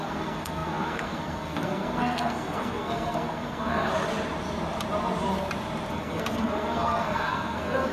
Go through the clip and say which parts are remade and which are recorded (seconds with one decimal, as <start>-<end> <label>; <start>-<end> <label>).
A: 0.0-3.9 remade; 3.9-5.9 recorded; 5.9-7.9 remade